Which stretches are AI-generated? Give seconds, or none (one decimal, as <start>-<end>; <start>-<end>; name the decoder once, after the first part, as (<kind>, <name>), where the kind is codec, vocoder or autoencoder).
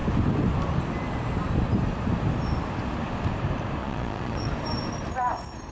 3.8-4.5 (vocoder, Vocos)